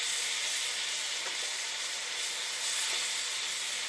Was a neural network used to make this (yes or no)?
no